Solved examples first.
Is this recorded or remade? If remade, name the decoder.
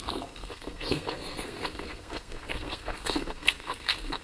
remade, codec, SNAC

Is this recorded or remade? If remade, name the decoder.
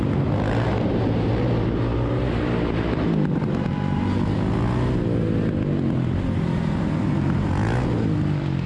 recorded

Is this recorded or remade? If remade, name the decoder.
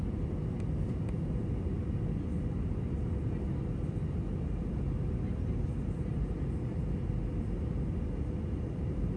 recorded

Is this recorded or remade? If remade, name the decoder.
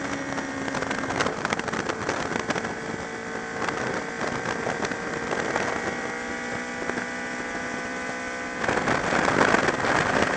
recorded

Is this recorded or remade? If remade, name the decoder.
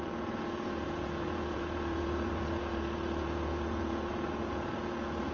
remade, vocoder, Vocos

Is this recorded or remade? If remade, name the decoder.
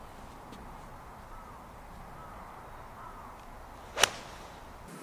recorded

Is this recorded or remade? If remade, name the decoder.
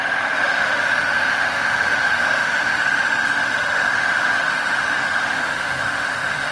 remade, autoencoder, DAC-VAE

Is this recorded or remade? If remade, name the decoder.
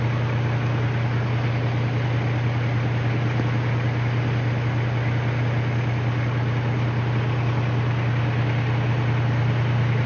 recorded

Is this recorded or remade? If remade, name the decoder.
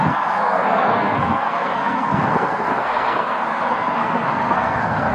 remade, codec, SNAC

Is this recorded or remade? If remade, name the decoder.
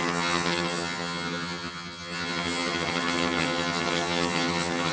remade, vocoder, HiFi-GAN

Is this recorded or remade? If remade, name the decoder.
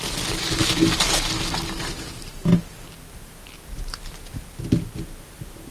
recorded